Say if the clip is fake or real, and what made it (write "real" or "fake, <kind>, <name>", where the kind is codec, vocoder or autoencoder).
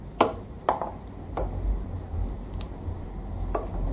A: real